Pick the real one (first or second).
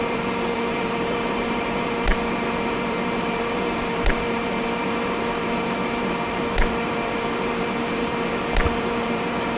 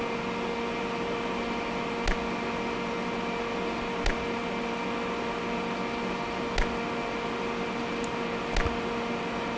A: second